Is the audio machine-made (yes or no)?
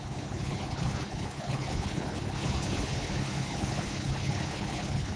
yes